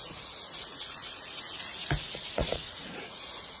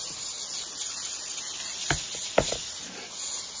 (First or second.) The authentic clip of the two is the second